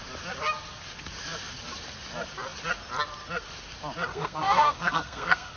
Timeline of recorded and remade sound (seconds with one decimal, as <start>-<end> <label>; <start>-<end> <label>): 0.0-4.1 recorded; 4.1-5.6 remade